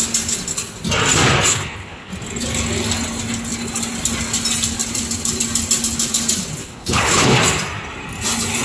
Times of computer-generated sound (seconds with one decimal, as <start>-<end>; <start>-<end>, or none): 1.5-2.1; 6.6-7.4